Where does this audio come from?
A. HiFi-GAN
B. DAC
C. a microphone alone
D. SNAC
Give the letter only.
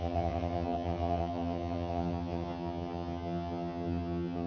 A